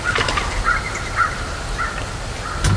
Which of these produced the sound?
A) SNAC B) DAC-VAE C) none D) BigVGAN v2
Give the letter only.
C